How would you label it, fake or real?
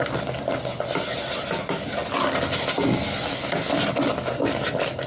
real